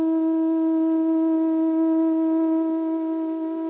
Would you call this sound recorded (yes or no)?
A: yes